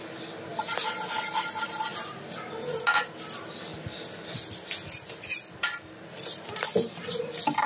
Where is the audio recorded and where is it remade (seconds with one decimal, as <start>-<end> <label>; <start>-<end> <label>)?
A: 0.0-7.7 recorded